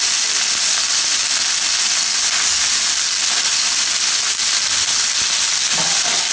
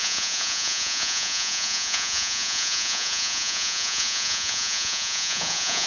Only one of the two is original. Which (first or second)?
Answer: first